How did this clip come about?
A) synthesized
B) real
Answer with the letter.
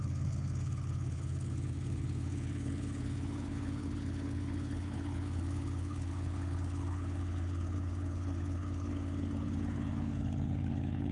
A